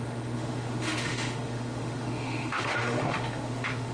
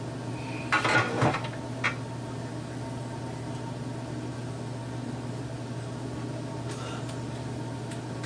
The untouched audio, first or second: second